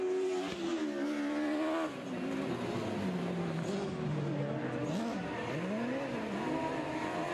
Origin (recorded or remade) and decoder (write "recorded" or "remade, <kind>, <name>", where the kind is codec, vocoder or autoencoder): recorded